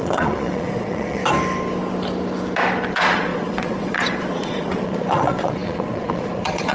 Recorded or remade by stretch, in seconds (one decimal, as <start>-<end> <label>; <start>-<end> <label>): 0.0-1.2 remade; 1.2-2.9 recorded; 2.9-6.7 remade

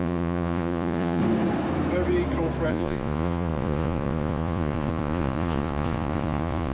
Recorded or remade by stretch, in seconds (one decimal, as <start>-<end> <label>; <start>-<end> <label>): 0.0-1.2 remade; 1.2-2.7 recorded; 2.7-6.7 remade

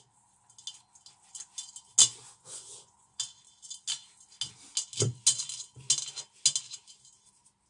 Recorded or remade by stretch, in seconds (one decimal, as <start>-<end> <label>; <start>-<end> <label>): 0.0-2.1 recorded; 2.1-3.2 remade; 3.2-7.7 recorded